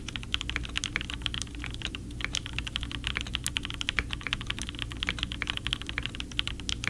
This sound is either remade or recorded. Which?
recorded